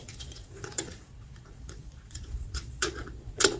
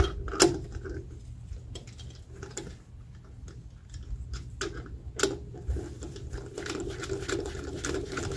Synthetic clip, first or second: first